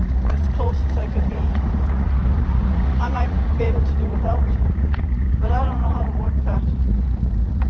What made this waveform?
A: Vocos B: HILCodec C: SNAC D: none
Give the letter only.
A